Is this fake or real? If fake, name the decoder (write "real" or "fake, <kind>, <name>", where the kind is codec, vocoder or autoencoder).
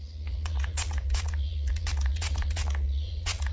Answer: fake, vocoder, Vocos